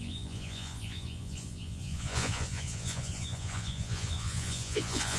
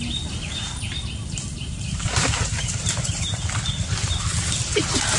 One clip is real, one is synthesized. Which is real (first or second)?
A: second